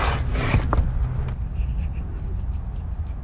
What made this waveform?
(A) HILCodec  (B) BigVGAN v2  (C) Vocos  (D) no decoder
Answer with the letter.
D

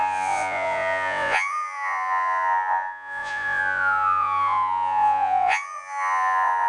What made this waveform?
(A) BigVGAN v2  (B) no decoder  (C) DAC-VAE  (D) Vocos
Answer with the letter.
D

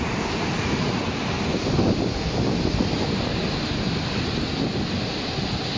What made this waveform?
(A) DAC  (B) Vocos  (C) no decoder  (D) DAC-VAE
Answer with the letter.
C